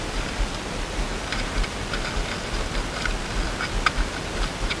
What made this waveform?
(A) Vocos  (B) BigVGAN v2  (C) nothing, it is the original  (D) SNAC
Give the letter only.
C